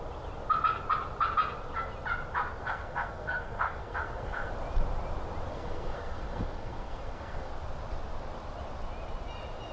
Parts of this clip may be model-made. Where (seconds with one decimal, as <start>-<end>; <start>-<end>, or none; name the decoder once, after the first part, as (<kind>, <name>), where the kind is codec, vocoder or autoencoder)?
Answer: 2.6-4.5 (codec, SNAC); 5.5-7.5

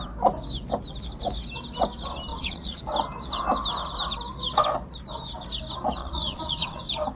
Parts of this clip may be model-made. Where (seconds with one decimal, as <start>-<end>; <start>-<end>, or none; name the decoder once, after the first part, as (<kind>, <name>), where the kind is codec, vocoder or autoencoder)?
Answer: 2.3-2.8 (vocoder, Vocos); 6.0-6.8

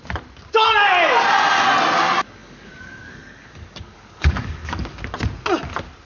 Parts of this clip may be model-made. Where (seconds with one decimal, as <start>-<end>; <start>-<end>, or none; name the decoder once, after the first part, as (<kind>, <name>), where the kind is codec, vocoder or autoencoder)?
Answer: 2.4-5.0 (codec, DAC)

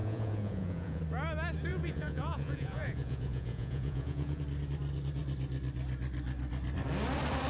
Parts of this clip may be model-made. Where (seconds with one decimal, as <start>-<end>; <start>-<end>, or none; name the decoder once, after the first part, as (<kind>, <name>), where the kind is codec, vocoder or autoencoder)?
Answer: 0.0-1.0 (vocoder, Vocos); 1.7-4.4

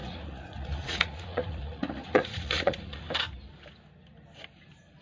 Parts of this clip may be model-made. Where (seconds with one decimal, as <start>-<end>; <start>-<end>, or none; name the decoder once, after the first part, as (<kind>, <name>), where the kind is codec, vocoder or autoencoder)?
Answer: 0.0-3.0 (vocoder, Vocos)

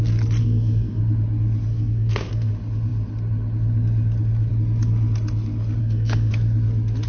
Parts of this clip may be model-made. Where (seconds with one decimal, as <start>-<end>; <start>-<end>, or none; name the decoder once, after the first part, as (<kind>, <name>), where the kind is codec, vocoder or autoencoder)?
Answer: 0.4-1.0 (codec, SNAC); 1.7-2.5; 5.8-6.3

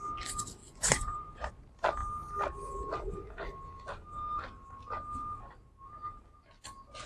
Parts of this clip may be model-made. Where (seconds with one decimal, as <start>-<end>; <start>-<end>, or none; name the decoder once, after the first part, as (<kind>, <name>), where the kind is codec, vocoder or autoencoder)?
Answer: 0.6-1.5 (vocoder, Vocos)

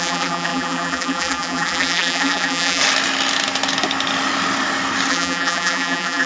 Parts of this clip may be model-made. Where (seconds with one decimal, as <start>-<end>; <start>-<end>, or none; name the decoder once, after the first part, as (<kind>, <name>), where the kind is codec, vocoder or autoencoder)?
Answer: 0.0-2.8 (vocoder, BigVGAN v2); 5.1-6.3